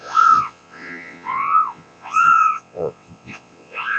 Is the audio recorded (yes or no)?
no